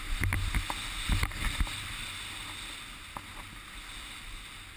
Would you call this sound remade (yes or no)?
no